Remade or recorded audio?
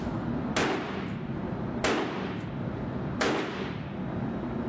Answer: recorded